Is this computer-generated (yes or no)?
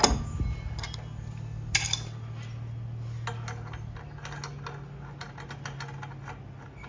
no